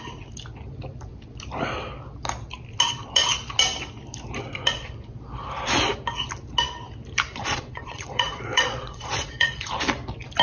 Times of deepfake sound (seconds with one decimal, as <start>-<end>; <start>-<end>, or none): 7.4-9.7